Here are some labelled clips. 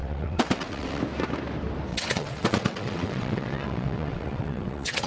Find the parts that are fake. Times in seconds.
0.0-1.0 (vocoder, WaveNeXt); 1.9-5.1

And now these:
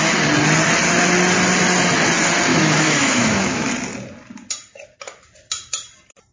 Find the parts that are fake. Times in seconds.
2.5-3.7 (autoencoder, DAC-VAE)

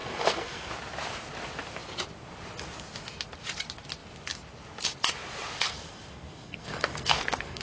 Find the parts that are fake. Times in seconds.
0.0-0.7 (codec, SNAC); 5.7-7.6